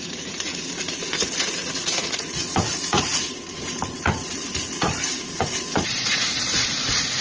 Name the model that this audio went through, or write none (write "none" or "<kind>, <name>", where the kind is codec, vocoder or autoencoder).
vocoder, Vocos